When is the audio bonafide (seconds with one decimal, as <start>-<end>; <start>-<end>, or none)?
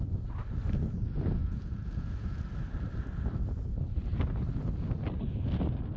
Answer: 0.0-1.4; 2.4-6.0